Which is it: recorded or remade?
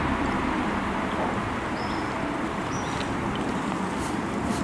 remade